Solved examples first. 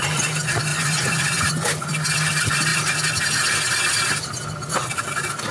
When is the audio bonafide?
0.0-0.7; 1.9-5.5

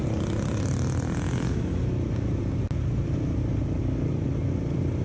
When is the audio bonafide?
0.0-5.0

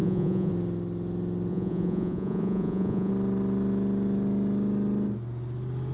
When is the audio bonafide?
0.5-1.5; 3.1-5.9

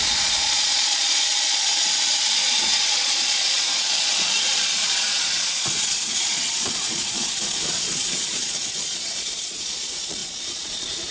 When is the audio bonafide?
1.7-2.3

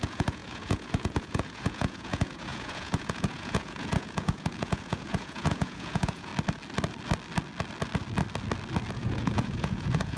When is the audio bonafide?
6.3-8.9